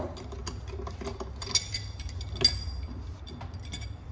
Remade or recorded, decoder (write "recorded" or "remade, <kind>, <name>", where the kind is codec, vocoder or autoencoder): recorded